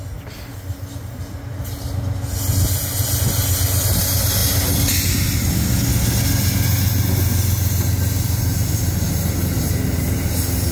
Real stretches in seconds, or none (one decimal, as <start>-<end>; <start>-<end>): 0.0-10.7